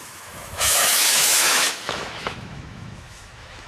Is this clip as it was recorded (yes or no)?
no